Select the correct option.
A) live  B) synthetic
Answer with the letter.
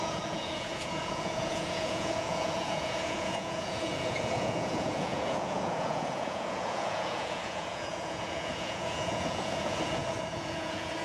B